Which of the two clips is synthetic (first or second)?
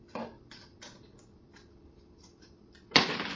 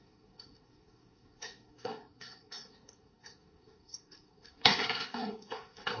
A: second